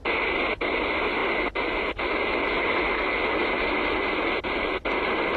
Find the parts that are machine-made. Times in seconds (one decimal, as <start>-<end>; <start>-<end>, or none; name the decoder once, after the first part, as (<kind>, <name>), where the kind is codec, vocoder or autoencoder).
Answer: none